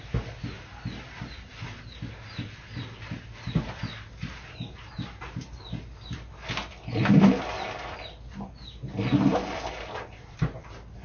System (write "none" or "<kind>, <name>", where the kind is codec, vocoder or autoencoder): none